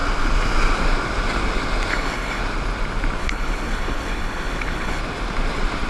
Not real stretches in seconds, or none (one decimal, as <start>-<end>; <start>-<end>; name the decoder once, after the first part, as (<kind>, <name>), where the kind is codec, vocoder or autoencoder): 1.9-2.4 (codec, HILCodec); 3.2-5.0